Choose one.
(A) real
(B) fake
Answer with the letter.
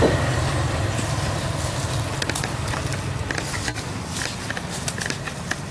A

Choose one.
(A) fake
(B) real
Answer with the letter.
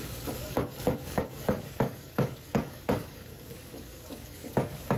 A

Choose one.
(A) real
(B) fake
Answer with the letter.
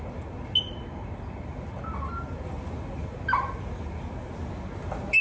A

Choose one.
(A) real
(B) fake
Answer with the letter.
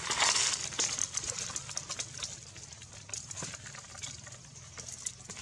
A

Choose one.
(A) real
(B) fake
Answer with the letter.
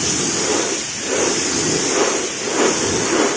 A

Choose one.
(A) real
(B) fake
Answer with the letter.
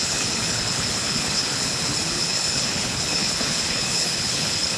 B